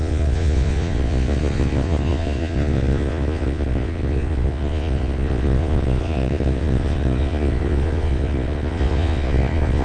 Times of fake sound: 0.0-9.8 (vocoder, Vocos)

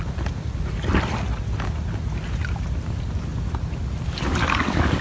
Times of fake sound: 4.4-5.0 (codec, DAC)

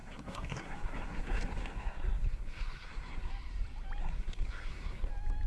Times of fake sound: 0.0-3.3 (codec, SNAC); 4.0-5.1